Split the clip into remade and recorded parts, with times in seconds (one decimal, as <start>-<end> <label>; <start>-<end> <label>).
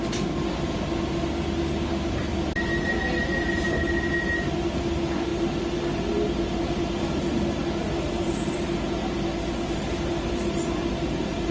0.0-11.5 recorded